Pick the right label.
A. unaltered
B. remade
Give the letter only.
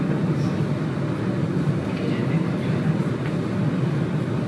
A